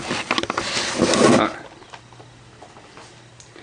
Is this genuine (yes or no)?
yes